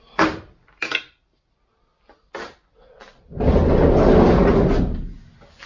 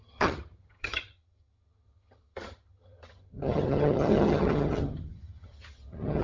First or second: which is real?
first